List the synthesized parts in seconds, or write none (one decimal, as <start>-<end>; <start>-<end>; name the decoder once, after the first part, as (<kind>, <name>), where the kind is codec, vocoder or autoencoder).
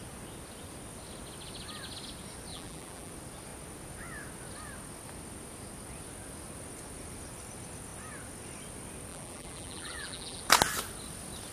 2.5-3.1 (vocoder, BigVGAN v2); 9.1-10.4